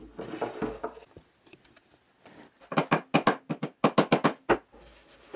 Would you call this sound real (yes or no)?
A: yes